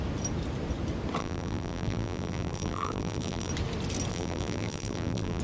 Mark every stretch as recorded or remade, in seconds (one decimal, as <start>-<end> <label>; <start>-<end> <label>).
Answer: 0.0-1.2 recorded; 1.2-3.5 remade; 3.5-4.1 recorded; 4.1-5.4 remade